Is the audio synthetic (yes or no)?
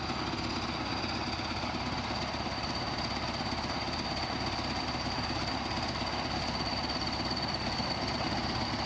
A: no